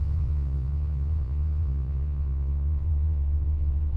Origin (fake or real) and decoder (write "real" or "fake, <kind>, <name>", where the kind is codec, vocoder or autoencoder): fake, vocoder, Vocos